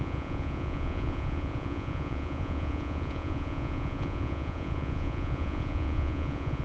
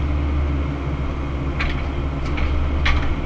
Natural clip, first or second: second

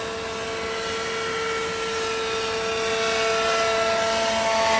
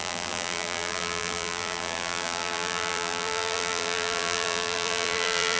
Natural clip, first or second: first